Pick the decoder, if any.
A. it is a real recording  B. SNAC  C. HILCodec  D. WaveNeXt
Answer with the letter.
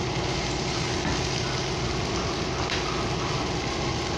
A